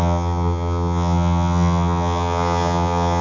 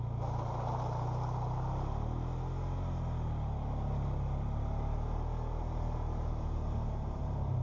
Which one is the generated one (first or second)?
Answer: first